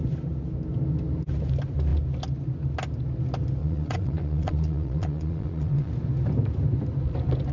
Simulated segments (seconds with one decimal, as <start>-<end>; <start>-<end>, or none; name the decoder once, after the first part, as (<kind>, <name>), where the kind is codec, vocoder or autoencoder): 3.6-5.9 (vocoder, Vocos)